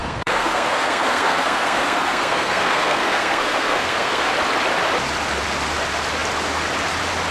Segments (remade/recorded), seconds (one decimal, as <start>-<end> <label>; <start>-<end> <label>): 0.0-4.3 remade; 4.3-7.3 recorded